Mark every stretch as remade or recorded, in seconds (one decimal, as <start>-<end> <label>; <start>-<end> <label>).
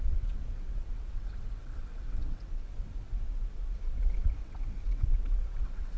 0.0-6.0 remade